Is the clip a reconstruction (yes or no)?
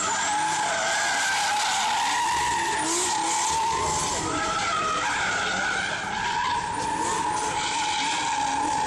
no